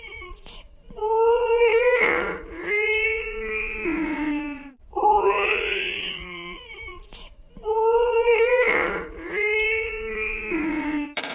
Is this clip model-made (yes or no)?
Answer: yes